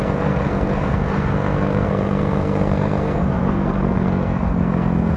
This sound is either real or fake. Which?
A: fake